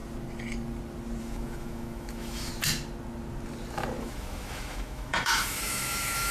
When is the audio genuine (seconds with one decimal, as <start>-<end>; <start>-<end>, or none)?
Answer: 0.0-1.2; 2.5-4.0